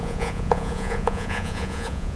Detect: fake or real fake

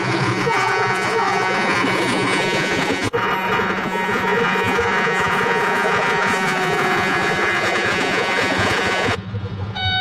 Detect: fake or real fake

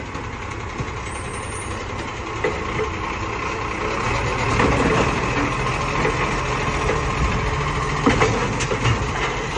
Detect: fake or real real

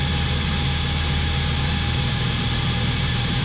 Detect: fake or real real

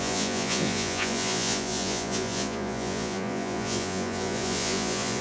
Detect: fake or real fake